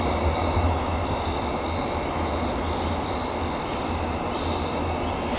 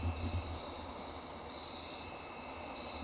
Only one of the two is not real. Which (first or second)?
second